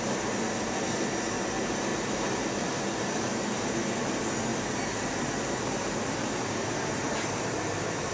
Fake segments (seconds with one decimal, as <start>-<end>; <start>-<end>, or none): 1.9-3.7; 4.5-8.1